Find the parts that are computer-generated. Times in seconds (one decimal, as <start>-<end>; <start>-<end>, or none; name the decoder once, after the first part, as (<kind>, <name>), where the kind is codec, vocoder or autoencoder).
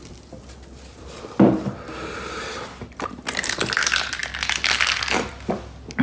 none